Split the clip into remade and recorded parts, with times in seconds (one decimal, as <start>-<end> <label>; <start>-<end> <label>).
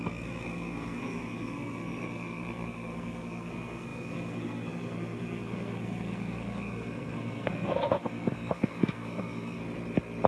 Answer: 0.0-9.6 remade; 9.6-10.3 recorded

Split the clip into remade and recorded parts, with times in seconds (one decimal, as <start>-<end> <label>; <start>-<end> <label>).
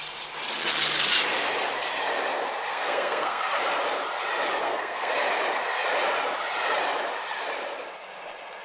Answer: 0.0-2.7 recorded; 2.7-3.4 remade; 3.4-4.6 recorded; 4.6-5.1 remade; 5.1-8.6 recorded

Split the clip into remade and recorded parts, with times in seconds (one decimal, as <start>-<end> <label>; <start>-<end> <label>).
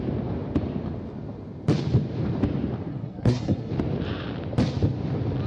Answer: 0.0-2.9 recorded; 2.9-3.7 remade; 3.7-5.5 recorded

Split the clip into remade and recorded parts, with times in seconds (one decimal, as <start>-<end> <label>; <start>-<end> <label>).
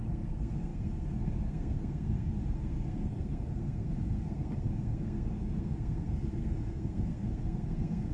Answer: 0.0-8.1 remade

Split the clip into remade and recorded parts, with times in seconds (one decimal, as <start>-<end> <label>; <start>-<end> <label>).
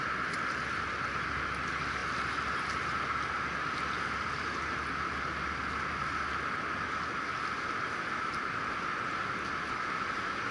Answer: 0.0-10.5 recorded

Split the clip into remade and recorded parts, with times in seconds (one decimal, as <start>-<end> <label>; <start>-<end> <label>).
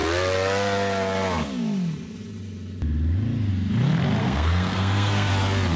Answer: 0.0-4.2 recorded; 4.2-5.3 remade; 5.3-5.8 recorded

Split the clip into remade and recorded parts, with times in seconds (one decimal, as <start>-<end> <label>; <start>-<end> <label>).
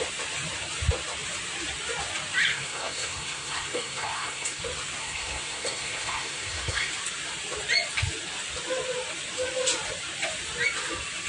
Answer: 0.0-2.5 recorded; 2.5-4.6 remade; 4.6-5.0 recorded; 5.0-6.9 remade; 6.9-11.3 recorded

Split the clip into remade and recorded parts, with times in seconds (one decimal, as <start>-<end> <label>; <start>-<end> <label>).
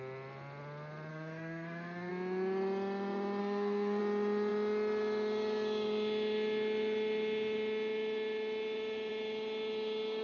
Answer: 0.0-1.1 recorded; 1.1-2.1 remade; 2.1-3.4 recorded; 3.4-4.0 remade; 4.0-10.2 recorded